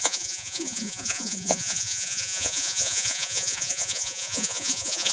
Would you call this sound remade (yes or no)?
yes